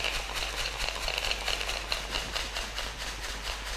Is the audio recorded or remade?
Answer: recorded